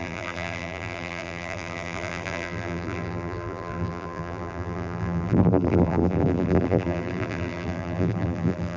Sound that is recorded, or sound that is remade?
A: remade